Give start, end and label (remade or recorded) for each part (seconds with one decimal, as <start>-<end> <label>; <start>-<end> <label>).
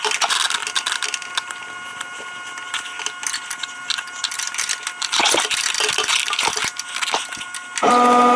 0.0-8.4 recorded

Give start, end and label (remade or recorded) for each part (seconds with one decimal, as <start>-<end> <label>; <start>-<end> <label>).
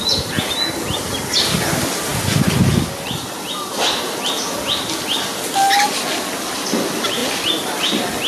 0.0-8.3 recorded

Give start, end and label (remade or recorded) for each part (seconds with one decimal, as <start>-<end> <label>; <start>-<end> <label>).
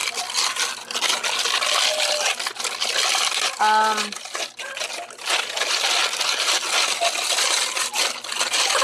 0.0-8.8 recorded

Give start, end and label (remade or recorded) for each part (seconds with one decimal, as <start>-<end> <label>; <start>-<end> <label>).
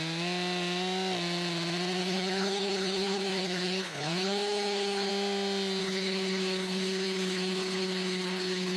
0.0-2.0 recorded; 2.0-5.1 remade; 5.1-5.8 recorded; 5.8-8.8 remade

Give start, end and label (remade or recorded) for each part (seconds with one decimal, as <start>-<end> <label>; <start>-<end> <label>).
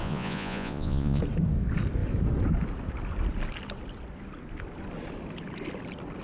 0.0-1.2 remade; 1.2-6.2 recorded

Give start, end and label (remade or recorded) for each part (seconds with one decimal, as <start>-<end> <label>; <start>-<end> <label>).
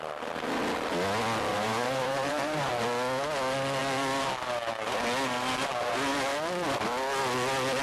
0.0-1.5 recorded; 1.5-2.7 remade; 2.7-7.8 recorded